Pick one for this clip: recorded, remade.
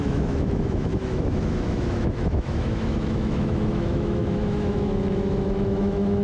remade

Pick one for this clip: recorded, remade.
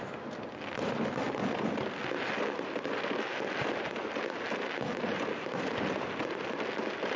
recorded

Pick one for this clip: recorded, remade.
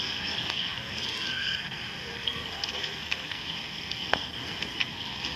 remade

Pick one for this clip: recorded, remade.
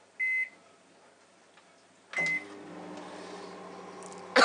recorded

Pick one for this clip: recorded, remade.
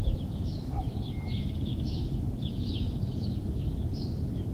remade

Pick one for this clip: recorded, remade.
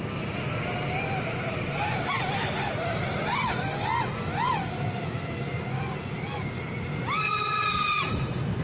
recorded